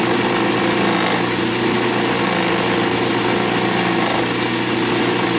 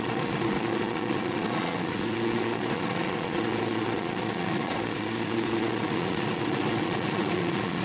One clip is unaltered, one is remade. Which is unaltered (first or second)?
first